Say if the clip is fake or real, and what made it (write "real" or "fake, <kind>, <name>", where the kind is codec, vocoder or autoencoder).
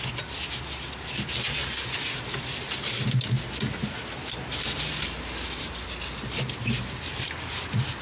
real